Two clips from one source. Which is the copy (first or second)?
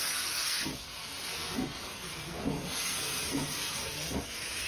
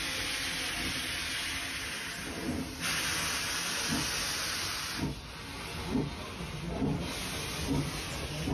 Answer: first